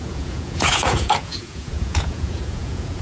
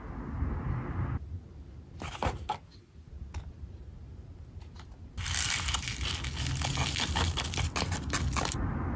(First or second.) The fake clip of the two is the first